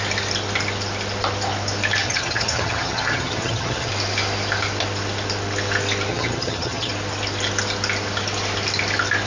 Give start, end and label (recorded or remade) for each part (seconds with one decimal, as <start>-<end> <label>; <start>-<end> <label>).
0.0-2.0 recorded; 2.0-3.9 remade; 3.9-6.1 recorded; 6.1-6.9 remade; 6.9-9.3 recorded